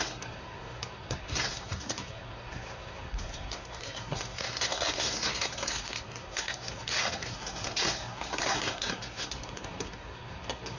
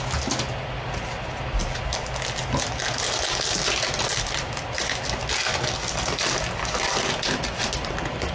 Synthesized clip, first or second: first